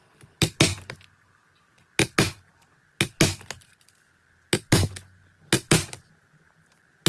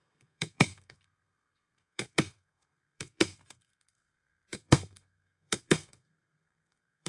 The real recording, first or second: first